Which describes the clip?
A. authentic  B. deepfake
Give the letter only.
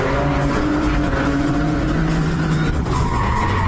B